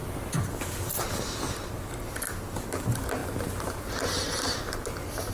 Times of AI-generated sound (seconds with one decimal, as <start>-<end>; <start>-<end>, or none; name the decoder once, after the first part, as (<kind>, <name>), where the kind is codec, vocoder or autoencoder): none